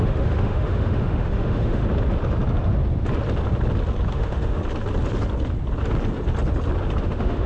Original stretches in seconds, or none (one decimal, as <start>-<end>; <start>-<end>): 1.8-4.1; 4.6-7.0